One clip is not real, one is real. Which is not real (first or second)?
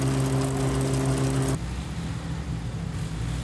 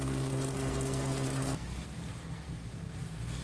second